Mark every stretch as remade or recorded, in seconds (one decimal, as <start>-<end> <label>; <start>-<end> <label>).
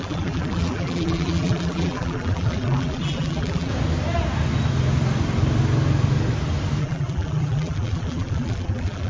0.0-3.7 remade; 3.7-6.8 recorded; 6.8-9.1 remade